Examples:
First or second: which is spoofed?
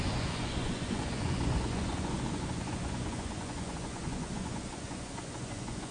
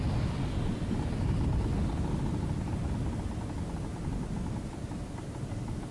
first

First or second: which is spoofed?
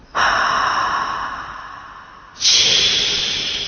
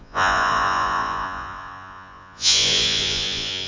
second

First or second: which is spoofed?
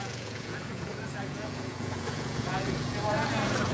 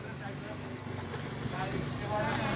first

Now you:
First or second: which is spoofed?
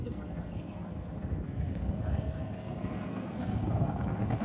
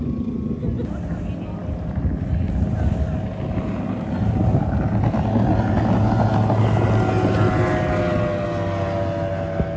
first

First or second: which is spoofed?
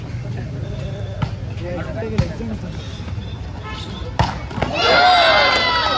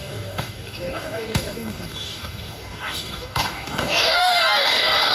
second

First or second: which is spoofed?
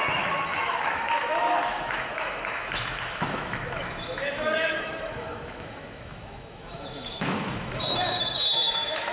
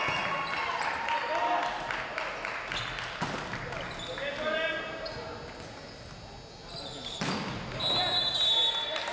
first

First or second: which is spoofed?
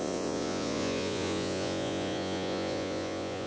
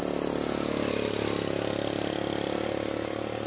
first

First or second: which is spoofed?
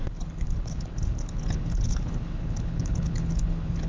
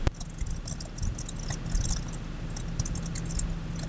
first